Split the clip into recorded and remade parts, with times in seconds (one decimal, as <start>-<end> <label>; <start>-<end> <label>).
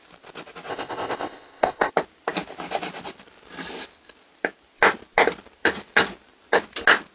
0.0-0.7 recorded; 0.7-1.9 remade; 1.9-7.1 recorded